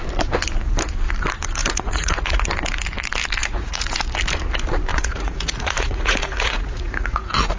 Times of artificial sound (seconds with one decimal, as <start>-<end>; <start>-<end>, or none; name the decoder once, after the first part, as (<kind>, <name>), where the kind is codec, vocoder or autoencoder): 1.6-2.4 (vocoder, Vocos); 3.4-4.0; 4.9-7.6